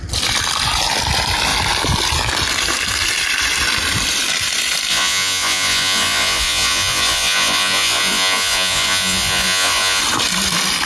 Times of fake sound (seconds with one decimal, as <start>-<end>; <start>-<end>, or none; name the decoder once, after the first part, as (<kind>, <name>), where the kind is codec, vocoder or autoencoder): 4.9-10.0 (vocoder, Vocos)